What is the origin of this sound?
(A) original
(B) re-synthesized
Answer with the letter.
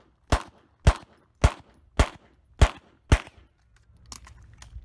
A